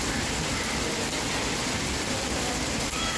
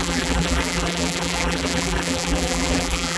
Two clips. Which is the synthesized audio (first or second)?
second